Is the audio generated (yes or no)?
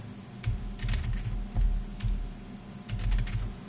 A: no